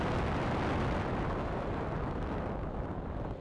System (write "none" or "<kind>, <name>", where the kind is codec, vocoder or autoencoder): none